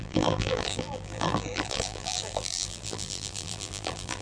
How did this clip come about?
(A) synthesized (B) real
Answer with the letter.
A